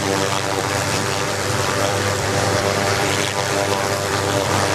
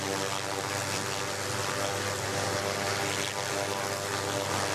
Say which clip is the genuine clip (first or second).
second